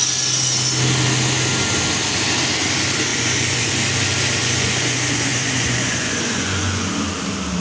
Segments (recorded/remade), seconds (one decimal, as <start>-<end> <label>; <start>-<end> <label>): 0.0-3.1 recorded; 3.1-3.7 remade; 3.7-4.4 recorded; 4.4-6.9 remade; 6.9-7.6 recorded